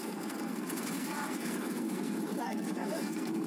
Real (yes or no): no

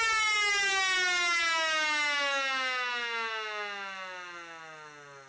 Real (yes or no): yes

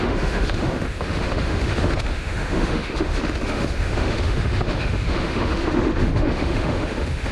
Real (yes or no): no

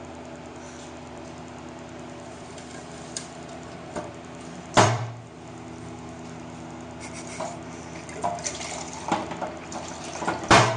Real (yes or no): no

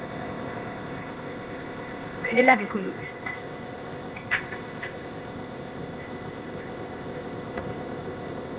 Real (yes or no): no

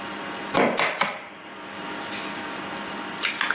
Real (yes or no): yes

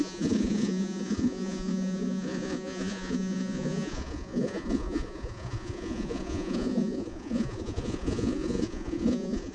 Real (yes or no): no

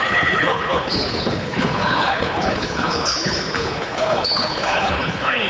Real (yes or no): no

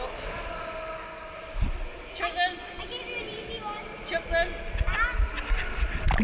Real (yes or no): yes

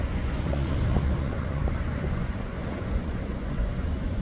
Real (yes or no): no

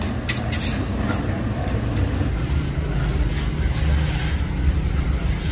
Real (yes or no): yes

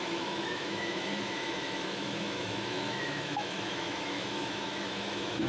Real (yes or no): no